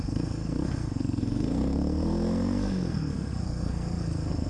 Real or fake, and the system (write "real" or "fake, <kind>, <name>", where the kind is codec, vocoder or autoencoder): fake, codec, SNAC